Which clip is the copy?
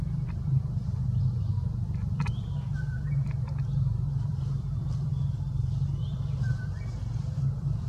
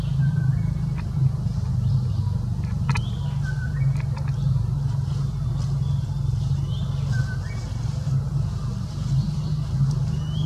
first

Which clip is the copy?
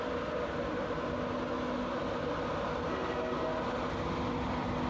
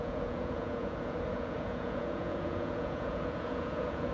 second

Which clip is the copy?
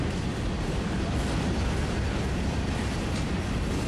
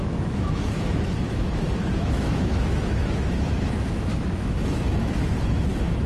second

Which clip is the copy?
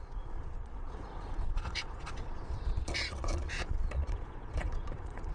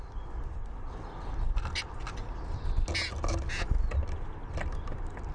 first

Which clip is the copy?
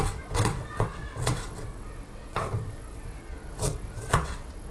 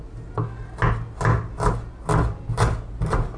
first